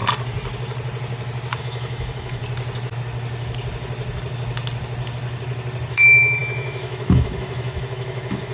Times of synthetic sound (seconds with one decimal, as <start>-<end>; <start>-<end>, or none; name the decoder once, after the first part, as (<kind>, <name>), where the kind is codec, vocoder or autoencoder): 1.6-2.4 (autoencoder, DAC-VAE); 5.9-8.5